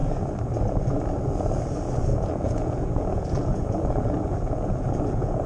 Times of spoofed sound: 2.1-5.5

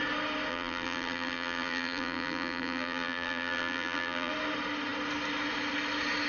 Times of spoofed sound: 0.5-4.3

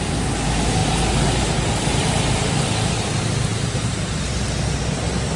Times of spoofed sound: none

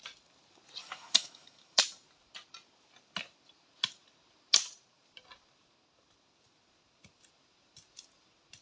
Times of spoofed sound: 0.8-1.8

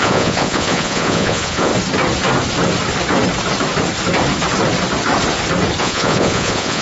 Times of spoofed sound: 0.0-1.7; 5.8-6.8

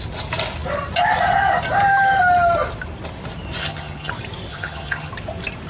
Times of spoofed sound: 3.6-4.1; 4.5-5.1

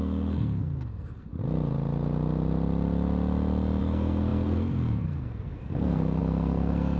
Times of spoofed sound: 0.0-1.3; 3.8-7.0

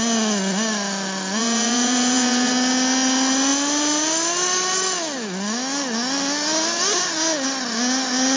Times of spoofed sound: 1.4-2.5